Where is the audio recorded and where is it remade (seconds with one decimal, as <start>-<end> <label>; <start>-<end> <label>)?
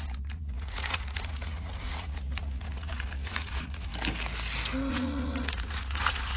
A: 0.0-3.9 remade; 3.9-4.9 recorded; 4.9-6.4 remade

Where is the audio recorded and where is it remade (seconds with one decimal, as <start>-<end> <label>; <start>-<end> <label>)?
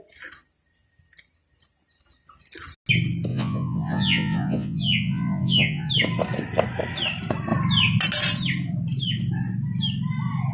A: 0.0-3.3 recorded; 3.3-5.9 remade; 5.9-10.5 recorded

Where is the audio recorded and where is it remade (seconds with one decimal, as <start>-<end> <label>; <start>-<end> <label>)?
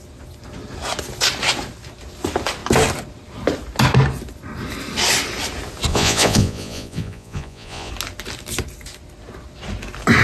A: 0.0-5.9 recorded; 5.9-7.9 remade; 7.9-10.2 recorded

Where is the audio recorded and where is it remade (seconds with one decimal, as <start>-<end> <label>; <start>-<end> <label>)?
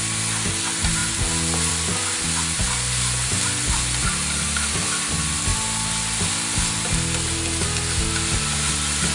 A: 0.0-9.1 recorded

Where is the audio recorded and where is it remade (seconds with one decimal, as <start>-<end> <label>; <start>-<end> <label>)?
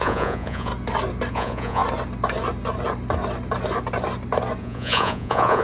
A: 0.0-0.7 remade; 0.7-1.3 recorded; 1.3-1.8 remade; 1.8-4.6 recorded; 4.6-5.6 remade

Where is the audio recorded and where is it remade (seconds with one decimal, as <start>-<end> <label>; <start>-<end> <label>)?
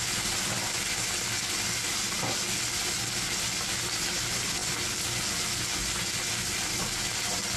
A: 0.0-7.6 recorded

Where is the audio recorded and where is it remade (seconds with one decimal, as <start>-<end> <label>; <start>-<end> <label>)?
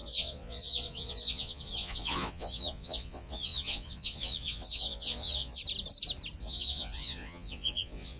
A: 0.0-5.6 remade; 5.6-6.4 recorded; 6.4-8.2 remade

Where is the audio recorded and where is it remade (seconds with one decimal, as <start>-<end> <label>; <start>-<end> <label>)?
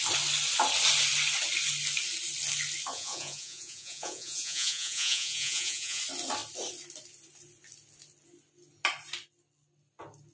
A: 0.0-2.9 recorded; 2.9-6.0 remade; 6.0-10.3 recorded